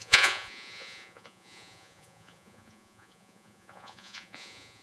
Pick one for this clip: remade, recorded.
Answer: remade